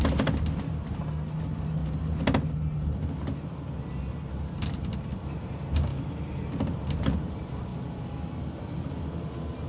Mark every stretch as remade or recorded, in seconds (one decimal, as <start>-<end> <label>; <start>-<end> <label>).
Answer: 0.0-5.9 recorded; 5.9-6.4 remade; 6.4-9.7 recorded